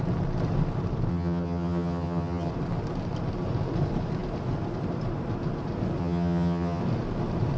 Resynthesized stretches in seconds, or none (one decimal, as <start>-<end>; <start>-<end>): 1.1-2.5; 6.0-6.8